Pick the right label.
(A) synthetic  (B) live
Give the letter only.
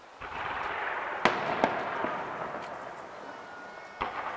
B